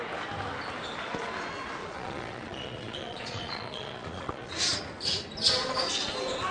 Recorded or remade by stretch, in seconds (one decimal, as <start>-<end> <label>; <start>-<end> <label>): 0.0-1.8 recorded; 1.8-4.5 remade; 4.5-6.5 recorded